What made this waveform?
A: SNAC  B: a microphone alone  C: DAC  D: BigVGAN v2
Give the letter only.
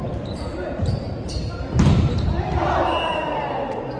D